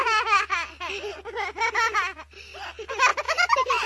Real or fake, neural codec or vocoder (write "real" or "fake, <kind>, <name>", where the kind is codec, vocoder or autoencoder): real